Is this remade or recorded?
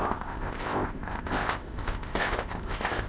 remade